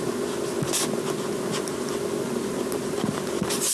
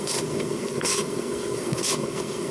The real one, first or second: first